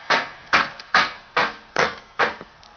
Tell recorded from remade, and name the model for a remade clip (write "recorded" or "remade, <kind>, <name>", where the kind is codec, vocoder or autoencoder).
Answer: remade, codec, SNAC